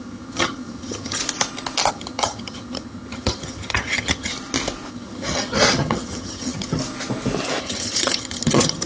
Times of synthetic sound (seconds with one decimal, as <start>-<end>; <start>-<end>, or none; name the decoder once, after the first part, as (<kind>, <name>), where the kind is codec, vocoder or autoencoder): 0.0-1.2 (vocoder, HiFi-GAN); 1.9-4.3; 4.9-6.8; 7.6-8.9